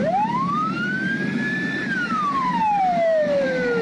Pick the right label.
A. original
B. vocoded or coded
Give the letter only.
B